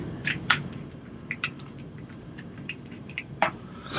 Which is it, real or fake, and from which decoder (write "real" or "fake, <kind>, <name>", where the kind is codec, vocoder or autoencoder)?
fake, vocoder, BigVGAN v2